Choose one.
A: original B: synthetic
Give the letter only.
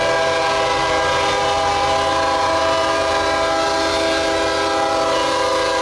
A